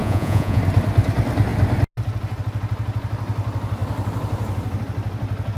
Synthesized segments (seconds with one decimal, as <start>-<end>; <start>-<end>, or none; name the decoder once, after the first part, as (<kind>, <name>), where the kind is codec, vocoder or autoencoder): 0.0-0.6 (vocoder, Vocos)